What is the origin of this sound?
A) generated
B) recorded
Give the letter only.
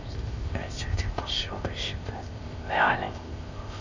A